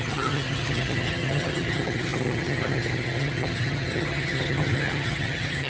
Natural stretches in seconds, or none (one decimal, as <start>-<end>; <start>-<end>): none